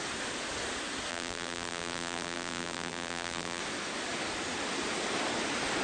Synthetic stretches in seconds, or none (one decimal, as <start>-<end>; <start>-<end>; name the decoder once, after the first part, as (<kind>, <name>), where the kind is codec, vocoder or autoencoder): 1.1-3.6 (vocoder, BigVGAN v2)